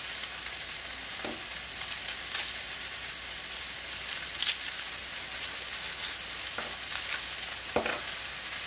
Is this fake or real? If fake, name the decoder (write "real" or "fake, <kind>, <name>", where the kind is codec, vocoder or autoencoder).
real